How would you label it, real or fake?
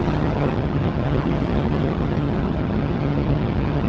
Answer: fake